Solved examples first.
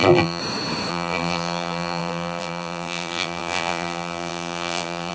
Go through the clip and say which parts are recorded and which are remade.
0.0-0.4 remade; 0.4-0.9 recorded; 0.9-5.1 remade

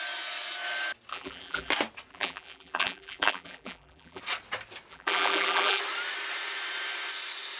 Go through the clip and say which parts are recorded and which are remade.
0.0-1.1 recorded; 1.1-1.7 remade; 1.7-2.1 recorded; 2.1-4.2 remade; 4.2-4.9 recorded; 4.9-5.8 remade; 5.8-7.6 recorded

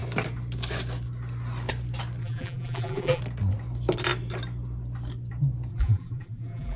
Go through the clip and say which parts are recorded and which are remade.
0.0-2.2 recorded; 2.2-3.2 remade; 3.2-5.7 recorded; 5.7-6.8 remade

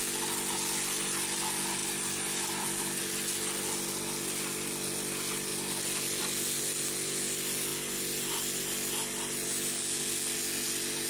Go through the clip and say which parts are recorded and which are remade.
0.0-1.8 recorded; 1.8-3.0 remade; 3.0-11.1 recorded

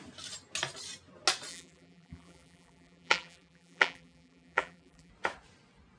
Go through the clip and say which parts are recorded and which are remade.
0.0-1.5 recorded; 1.5-5.1 remade; 5.1-6.0 recorded

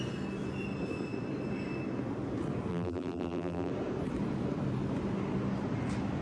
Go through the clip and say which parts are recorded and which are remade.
0.0-2.7 recorded; 2.7-3.7 remade; 3.7-6.2 recorded

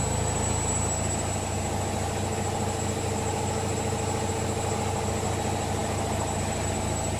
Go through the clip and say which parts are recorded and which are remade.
0.0-7.2 recorded

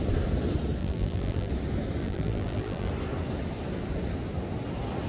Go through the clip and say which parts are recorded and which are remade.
0.0-0.8 recorded; 0.8-1.5 remade; 1.5-2.0 recorded; 2.0-2.9 remade; 2.9-5.1 recorded